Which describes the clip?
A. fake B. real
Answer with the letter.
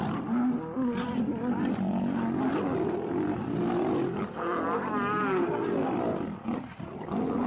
B